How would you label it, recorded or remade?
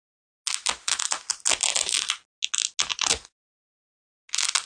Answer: recorded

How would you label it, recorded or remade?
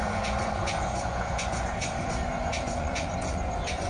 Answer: remade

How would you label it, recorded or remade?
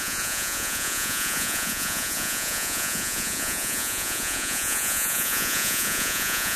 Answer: remade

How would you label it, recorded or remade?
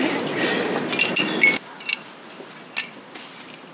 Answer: recorded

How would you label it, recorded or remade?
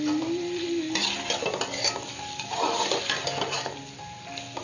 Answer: recorded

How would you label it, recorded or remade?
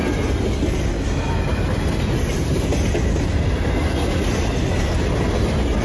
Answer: recorded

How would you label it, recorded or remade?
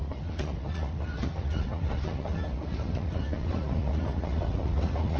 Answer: remade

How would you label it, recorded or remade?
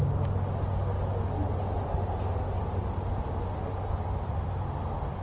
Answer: recorded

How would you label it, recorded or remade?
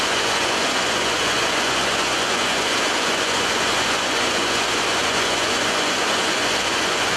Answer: remade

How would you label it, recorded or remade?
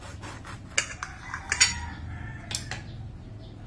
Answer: recorded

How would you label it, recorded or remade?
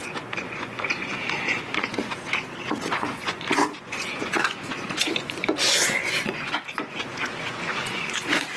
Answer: remade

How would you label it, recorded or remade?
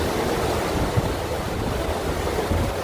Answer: recorded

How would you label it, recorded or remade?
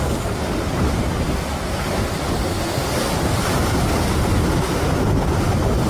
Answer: recorded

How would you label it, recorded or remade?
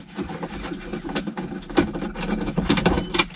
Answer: recorded